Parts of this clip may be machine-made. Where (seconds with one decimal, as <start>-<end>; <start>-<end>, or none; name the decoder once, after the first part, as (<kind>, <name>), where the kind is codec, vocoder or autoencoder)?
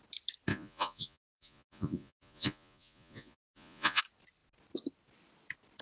0.5-4.0 (vocoder, Vocos)